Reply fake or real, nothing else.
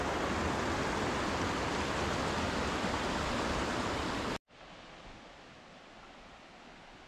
real